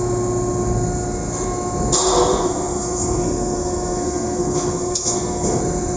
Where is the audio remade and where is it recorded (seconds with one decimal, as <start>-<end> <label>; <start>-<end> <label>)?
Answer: 0.0-2.3 recorded; 2.3-5.6 remade; 5.6-6.0 recorded